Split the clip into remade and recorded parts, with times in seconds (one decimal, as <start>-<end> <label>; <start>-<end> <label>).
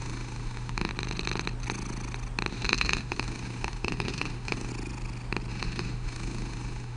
0.0-0.9 remade; 0.9-2.5 recorded; 2.5-4.7 remade; 4.7-5.5 recorded; 5.5-7.0 remade